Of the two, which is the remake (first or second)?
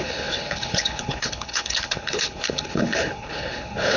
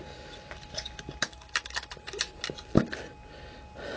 first